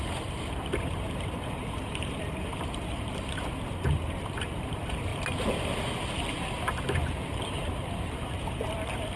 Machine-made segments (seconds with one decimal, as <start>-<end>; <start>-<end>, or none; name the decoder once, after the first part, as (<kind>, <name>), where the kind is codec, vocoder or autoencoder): 0.0-5.1 (vocoder, BigVGAN v2); 7.3-9.2